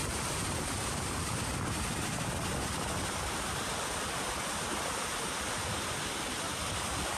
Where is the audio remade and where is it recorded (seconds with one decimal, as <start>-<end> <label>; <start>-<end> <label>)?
0.0-1.7 remade; 1.7-7.2 recorded